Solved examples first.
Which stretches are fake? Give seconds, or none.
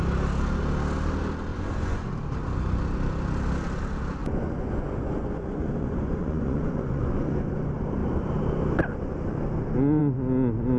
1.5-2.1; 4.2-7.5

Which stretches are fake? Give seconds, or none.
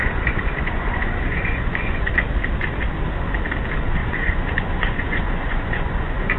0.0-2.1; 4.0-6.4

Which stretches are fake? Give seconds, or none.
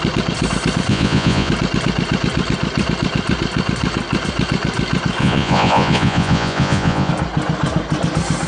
0.9-1.5; 5.2-7.1